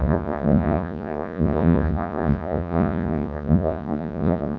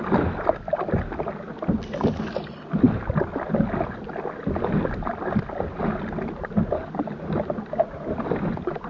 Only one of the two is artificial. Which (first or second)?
first